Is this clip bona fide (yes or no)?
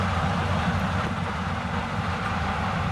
yes